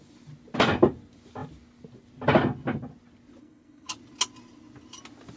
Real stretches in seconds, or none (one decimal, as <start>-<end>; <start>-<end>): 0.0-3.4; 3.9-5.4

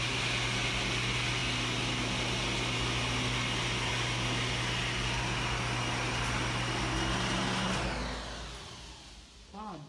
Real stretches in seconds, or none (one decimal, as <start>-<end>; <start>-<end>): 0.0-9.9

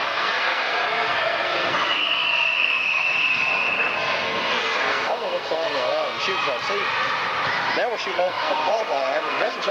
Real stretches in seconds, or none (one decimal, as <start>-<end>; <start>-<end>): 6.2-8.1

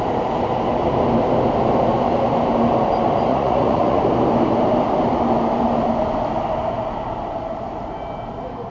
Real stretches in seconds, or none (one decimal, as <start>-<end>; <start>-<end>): 0.0-3.3; 4.0-8.7

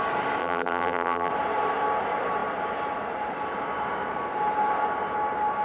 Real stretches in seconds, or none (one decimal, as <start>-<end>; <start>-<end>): 0.0-0.4; 1.3-5.6

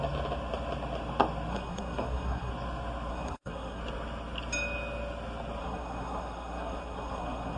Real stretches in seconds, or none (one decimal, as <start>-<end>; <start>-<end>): 0.0-1.5; 2.5-3.1; 3.8-5.6